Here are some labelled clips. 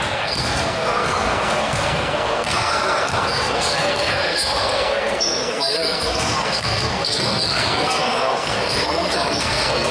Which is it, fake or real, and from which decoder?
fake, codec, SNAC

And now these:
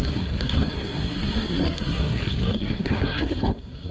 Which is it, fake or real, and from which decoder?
fake, codec, SNAC